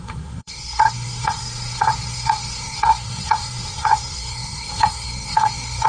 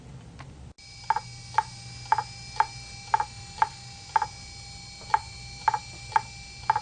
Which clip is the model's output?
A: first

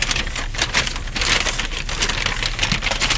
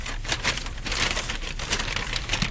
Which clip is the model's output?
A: second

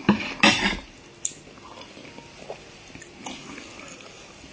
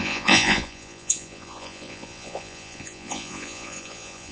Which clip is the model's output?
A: second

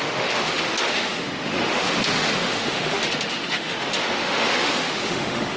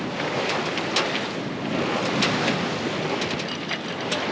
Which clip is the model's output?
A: first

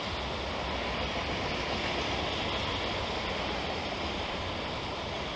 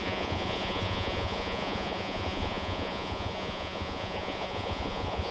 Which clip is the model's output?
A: second